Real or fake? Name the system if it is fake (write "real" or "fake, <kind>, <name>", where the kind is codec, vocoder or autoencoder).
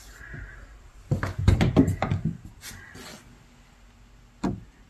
real